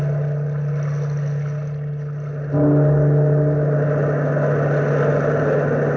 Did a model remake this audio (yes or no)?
no